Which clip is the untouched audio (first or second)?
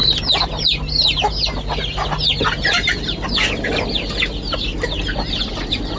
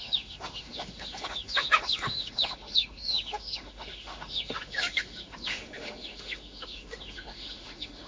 first